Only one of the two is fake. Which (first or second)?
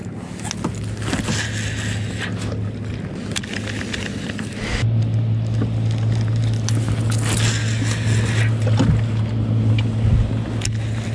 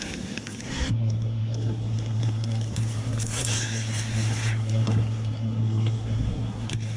second